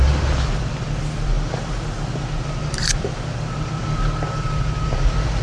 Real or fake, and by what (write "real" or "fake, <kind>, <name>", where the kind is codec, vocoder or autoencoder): fake, vocoder, BigVGAN v2